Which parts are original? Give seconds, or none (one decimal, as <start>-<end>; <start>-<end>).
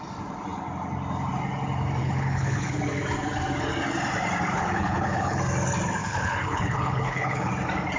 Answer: 0.0-2.0; 2.8-4.5; 5.4-6.0; 7.5-8.0